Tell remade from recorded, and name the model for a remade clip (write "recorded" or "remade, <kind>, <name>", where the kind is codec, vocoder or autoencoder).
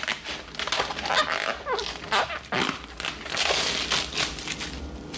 recorded